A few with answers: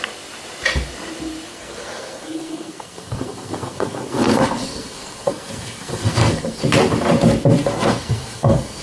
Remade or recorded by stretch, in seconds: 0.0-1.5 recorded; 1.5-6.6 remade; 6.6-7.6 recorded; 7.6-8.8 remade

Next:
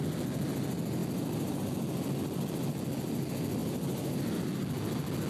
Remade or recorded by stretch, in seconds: 0.0-5.3 recorded

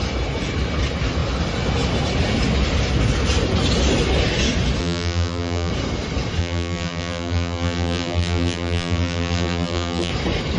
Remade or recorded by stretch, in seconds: 0.0-4.8 recorded; 4.8-5.7 remade; 5.7-6.4 recorded; 6.4-10.1 remade; 10.1-10.6 recorded

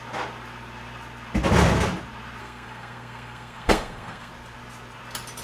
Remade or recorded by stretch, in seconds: 0.0-2.4 recorded; 2.4-4.3 remade; 4.3-5.4 recorded

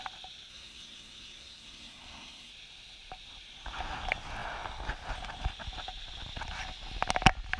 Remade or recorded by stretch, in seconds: 0.0-0.5 recorded; 0.5-2.5 remade; 2.5-7.6 recorded

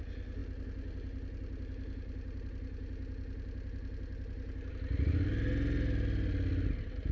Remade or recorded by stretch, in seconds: 0.0-7.1 recorded

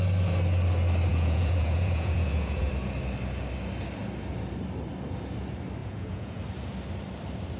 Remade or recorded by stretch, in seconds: 0.0-1.1 recorded; 1.1-2.7 remade; 2.7-5.8 recorded; 5.8-6.4 remade; 6.4-7.6 recorded

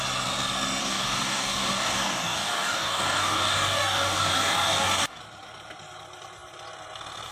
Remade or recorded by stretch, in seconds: 0.0-0.8 recorded; 0.8-5.2 remade; 5.2-7.3 recorded